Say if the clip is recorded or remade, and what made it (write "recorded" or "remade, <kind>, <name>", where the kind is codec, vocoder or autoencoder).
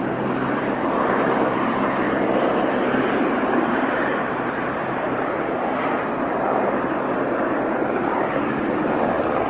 remade, vocoder, BigVGAN v2